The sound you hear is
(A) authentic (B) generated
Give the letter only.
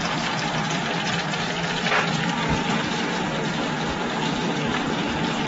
A